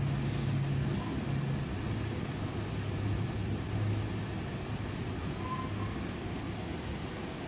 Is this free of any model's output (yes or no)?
yes